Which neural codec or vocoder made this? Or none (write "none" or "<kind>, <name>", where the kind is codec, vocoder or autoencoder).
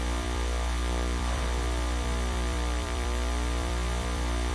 vocoder, BigVGAN v2